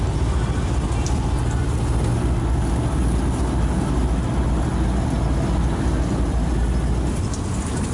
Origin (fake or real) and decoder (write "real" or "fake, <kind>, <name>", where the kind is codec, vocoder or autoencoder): real